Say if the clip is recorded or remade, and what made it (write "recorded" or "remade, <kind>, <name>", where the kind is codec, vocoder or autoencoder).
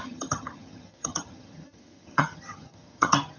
remade, vocoder, HiFi-GAN